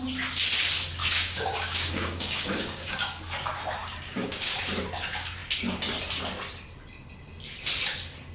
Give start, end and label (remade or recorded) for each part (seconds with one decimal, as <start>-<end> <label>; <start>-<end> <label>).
0.0-1.0 recorded; 1.0-3.2 remade; 3.2-3.8 recorded; 3.8-4.6 remade; 4.6-8.3 recorded